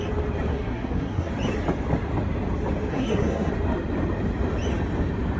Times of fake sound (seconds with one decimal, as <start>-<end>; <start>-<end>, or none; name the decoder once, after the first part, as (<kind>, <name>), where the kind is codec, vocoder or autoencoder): 0.5-1.3 (codec, SNAC); 2.9-3.5